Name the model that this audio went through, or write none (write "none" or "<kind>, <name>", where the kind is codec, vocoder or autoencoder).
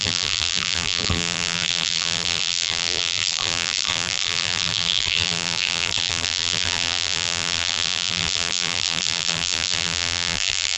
vocoder, BigVGAN v2